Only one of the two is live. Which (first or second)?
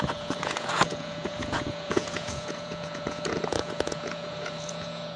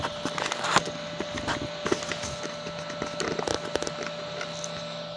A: second